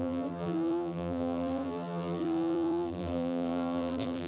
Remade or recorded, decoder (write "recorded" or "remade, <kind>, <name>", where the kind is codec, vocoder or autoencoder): remade, vocoder, BigVGAN v2